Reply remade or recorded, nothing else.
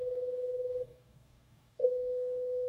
remade